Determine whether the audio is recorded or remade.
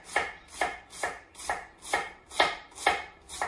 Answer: recorded